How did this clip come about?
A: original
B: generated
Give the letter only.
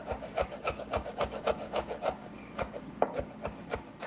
B